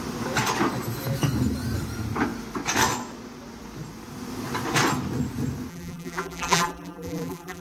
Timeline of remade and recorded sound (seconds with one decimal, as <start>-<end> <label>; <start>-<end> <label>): 0.0-5.7 recorded; 5.7-7.6 remade